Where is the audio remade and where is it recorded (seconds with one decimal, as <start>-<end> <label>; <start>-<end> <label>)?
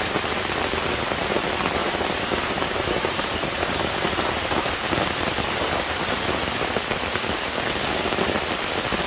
0.0-1.8 recorded; 1.8-6.6 remade; 6.6-9.1 recorded